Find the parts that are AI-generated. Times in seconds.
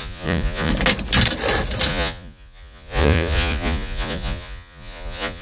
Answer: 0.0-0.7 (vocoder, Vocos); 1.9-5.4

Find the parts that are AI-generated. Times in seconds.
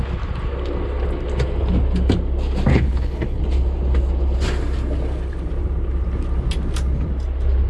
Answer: 2.7-3.4 (codec, HILCodec)